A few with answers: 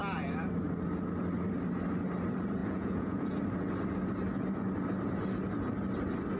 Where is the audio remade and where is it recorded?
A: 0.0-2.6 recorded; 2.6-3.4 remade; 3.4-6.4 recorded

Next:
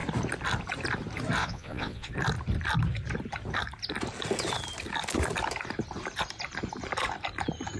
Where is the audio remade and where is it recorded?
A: 0.0-1.4 recorded; 1.4-2.1 remade; 2.1-7.8 recorded

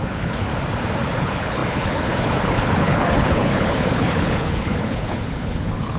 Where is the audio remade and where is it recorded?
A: 0.0-0.5 remade; 0.5-1.2 recorded; 1.2-6.0 remade

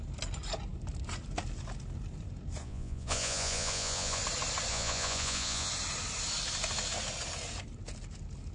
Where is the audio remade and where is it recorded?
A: 0.0-2.6 recorded; 2.6-4.2 remade; 4.2-4.7 recorded; 4.7-5.7 remade; 5.7-8.5 recorded

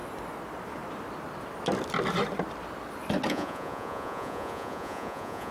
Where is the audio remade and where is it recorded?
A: 0.0-3.3 recorded; 3.3-5.5 remade

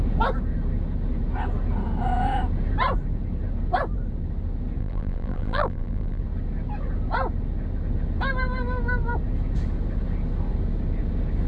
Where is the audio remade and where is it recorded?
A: 0.0-4.8 recorded; 4.8-6.2 remade; 6.2-11.5 recorded

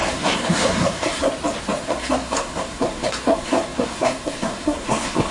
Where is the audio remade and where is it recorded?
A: 0.0-1.3 remade; 1.3-1.8 recorded; 1.8-5.3 remade

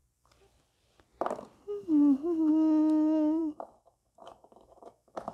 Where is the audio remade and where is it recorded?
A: 0.0-2.5 recorded; 2.5-5.3 remade